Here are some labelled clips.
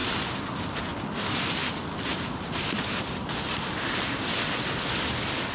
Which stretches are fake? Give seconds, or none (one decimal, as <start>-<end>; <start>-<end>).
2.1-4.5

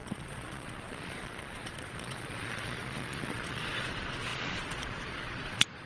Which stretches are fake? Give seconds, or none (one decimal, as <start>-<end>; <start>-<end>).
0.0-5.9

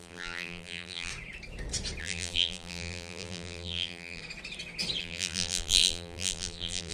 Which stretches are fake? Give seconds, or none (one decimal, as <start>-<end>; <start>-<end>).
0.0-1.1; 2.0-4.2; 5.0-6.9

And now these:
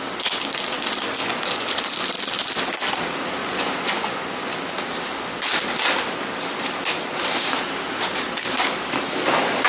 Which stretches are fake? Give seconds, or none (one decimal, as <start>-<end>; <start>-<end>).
1.2-1.8; 3.4-4.5

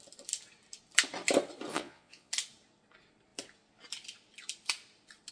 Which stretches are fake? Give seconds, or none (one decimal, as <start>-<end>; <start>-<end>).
1.7-2.3